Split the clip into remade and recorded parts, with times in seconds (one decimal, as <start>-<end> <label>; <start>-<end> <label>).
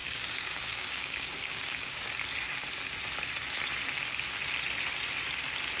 0.0-2.1 remade; 2.1-5.8 recorded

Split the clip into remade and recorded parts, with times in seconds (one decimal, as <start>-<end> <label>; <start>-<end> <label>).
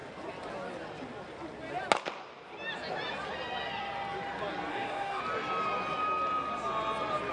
0.0-4.7 recorded; 4.7-5.2 remade; 5.2-7.3 recorded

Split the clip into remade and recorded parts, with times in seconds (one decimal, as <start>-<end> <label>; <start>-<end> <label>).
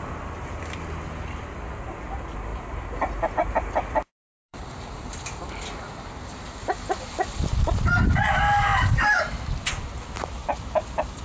0.0-2.5 recorded; 2.5-5.4 remade; 5.4-10.4 recorded; 10.4-11.2 remade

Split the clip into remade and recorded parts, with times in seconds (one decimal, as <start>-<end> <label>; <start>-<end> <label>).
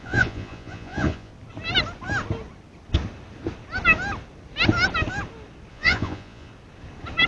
0.0-1.3 remade; 1.3-5.7 recorded; 5.7-6.5 remade; 6.5-7.3 recorded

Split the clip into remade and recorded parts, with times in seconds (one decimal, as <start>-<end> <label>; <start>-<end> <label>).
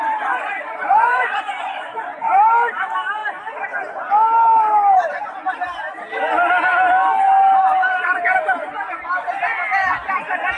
0.0-0.8 recorded; 0.8-2.4 remade; 2.4-10.6 recorded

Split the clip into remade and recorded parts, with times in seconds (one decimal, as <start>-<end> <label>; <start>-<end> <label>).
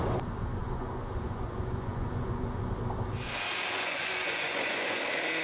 0.0-0.6 recorded; 0.6-2.7 remade; 2.7-3.7 recorded; 3.7-5.0 remade; 5.0-5.4 recorded